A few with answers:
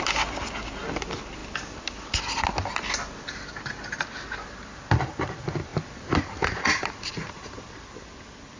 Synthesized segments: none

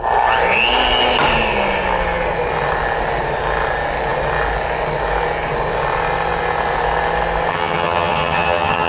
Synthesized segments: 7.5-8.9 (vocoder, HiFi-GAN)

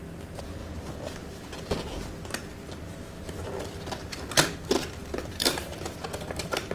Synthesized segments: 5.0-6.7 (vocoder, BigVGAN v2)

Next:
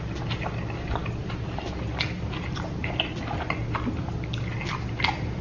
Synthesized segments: none